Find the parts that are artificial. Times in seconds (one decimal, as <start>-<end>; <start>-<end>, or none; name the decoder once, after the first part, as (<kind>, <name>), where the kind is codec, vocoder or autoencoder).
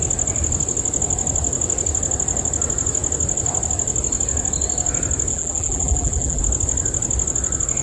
5.3-6.4 (vocoder, BigVGAN v2)